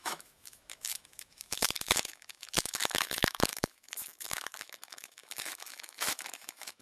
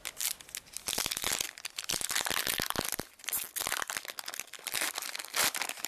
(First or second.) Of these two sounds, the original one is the second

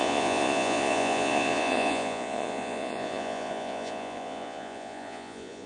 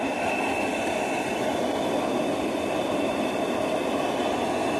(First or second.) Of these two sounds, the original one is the second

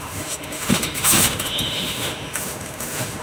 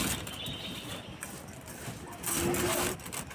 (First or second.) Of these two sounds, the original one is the second